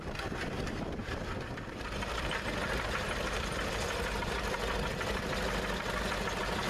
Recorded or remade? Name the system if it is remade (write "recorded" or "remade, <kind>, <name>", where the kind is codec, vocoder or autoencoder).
remade, vocoder, BigVGAN v2